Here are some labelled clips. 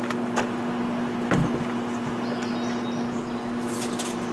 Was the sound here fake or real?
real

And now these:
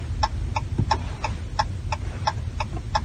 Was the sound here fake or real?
real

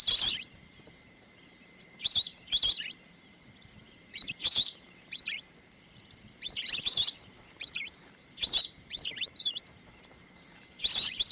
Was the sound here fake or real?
fake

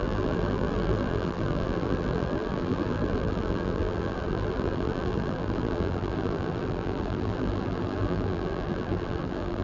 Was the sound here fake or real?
fake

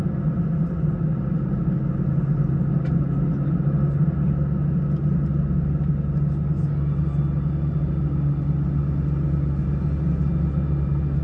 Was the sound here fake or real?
real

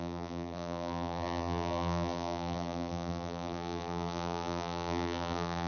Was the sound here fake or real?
fake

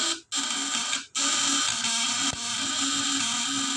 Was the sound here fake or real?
real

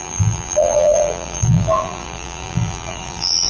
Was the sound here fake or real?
fake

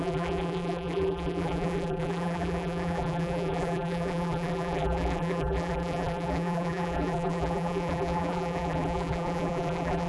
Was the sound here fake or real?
fake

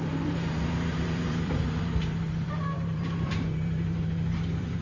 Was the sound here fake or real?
fake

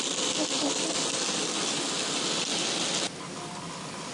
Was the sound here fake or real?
real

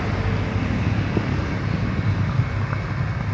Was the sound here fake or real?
real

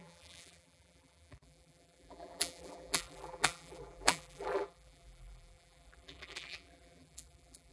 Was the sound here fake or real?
fake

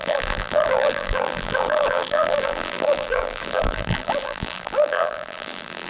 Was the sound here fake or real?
fake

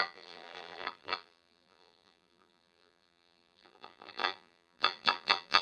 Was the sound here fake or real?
fake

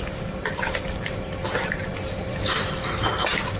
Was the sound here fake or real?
real